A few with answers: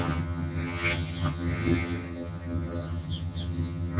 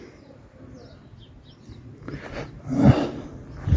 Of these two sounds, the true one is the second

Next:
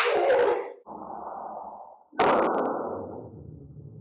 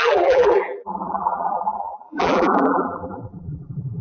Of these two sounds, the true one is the first